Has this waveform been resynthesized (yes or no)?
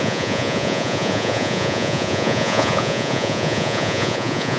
yes